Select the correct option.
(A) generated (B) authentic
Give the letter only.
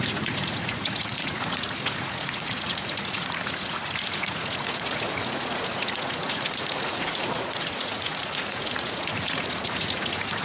A